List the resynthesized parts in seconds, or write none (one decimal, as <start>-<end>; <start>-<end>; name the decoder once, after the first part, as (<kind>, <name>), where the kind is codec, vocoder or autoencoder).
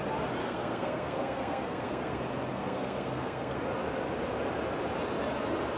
0.4-2.2 (codec, SNAC); 2.6-3.6